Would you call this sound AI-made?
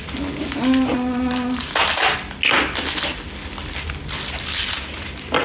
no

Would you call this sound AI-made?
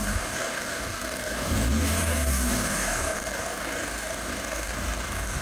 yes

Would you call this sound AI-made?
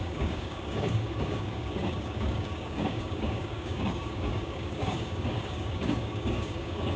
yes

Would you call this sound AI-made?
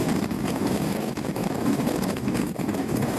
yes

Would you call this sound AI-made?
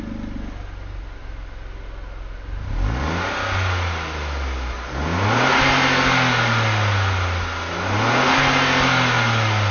no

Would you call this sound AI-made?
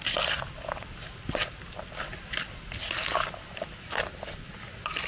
no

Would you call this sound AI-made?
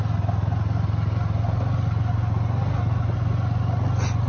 no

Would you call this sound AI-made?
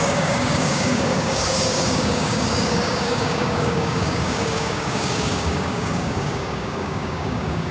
yes